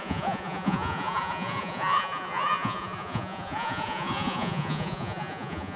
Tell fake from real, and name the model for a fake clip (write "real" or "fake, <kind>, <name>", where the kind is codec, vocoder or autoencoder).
fake, vocoder, Vocos